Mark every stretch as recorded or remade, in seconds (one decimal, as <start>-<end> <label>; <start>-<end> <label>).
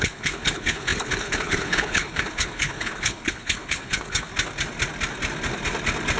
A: 0.0-4.3 remade; 4.3-6.2 recorded